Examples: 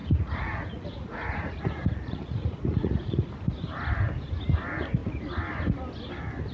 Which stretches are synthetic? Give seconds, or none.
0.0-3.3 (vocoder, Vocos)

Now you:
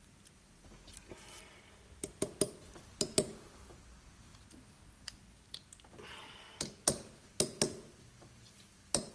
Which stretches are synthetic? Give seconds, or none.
none

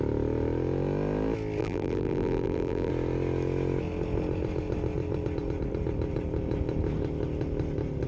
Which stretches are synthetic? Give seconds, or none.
1.6-2.9 (vocoder, BigVGAN v2)

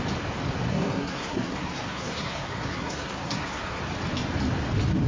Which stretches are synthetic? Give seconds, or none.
0.7-3.8 (codec, SNAC)

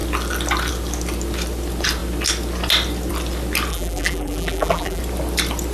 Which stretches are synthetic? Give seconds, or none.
3.7-5.0 (vocoder, BigVGAN v2)